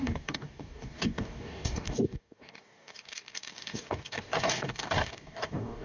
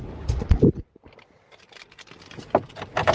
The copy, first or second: first